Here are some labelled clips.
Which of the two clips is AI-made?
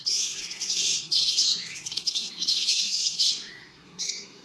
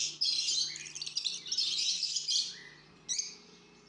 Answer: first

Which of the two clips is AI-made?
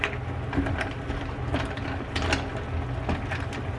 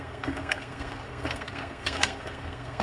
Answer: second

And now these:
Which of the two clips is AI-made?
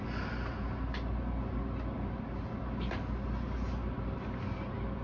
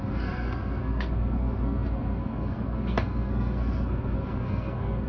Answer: second